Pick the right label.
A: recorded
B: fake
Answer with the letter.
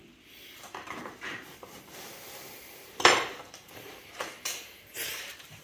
B